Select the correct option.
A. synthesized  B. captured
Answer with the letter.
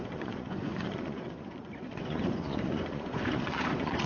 A